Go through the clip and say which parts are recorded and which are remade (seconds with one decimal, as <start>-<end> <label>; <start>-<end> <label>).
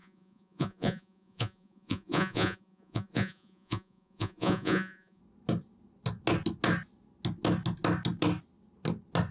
0.0-5.2 remade; 5.2-9.3 recorded